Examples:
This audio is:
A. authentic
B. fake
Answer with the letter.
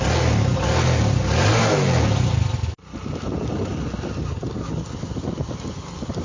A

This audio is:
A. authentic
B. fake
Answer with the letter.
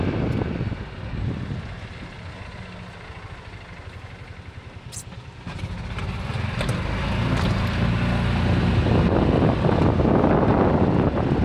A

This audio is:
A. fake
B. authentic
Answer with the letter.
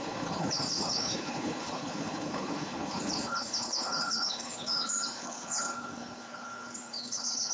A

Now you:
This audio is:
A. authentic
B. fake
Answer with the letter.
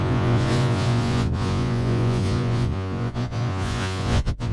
B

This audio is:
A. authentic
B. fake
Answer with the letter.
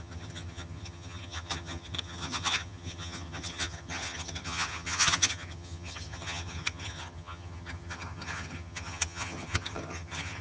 B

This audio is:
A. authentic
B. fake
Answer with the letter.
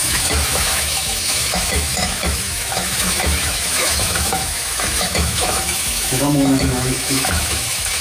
B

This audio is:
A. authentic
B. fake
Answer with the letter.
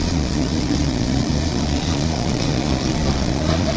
B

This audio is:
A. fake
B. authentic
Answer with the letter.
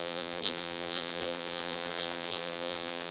A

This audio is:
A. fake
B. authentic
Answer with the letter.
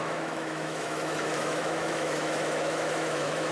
A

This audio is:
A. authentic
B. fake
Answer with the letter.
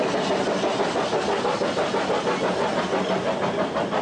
A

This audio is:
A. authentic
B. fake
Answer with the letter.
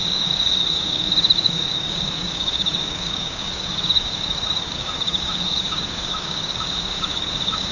B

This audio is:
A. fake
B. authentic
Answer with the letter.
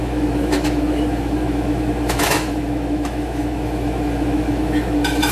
A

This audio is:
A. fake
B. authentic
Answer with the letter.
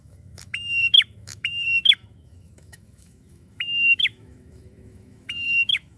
A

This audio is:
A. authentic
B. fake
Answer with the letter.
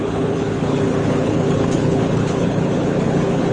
B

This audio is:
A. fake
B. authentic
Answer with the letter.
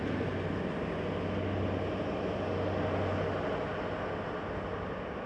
B